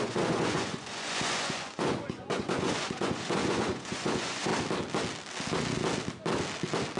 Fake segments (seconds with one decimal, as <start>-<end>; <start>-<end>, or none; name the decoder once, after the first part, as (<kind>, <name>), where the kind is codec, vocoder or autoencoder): 0.0-4.5 (vocoder, Vocos)